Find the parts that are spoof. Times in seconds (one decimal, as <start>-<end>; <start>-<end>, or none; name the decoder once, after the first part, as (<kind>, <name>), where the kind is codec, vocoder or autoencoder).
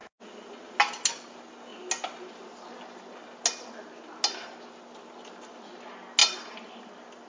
none